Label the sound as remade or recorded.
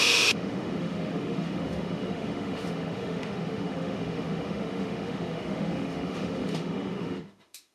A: remade